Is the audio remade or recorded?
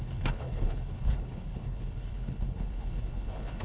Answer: remade